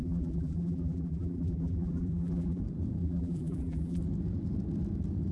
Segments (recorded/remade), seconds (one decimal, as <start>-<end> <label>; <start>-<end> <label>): 0.0-2.6 remade; 2.6-3.0 recorded; 3.0-4.0 remade; 4.0-5.3 recorded